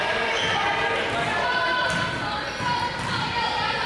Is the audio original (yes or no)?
yes